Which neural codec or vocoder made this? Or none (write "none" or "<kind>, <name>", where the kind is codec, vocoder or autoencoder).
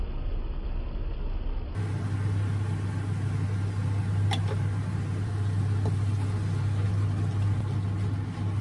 none